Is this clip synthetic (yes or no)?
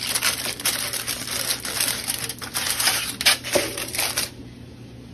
no